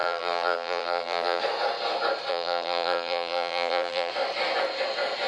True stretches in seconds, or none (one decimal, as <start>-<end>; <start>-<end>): 1.4-2.3; 4.1-5.3

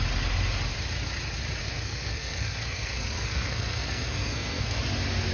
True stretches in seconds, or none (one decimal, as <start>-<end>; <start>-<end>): 0.0-1.6; 4.8-5.3

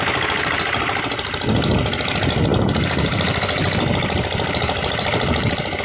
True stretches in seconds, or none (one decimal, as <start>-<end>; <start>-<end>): 0.0-5.8

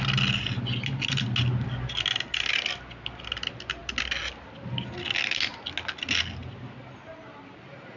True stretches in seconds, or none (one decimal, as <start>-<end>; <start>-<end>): 0.0-8.0